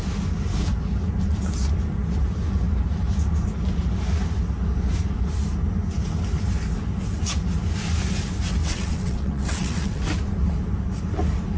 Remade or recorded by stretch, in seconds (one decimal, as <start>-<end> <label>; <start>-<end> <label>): 0.0-8.6 recorded; 8.6-10.0 remade; 10.0-11.6 recorded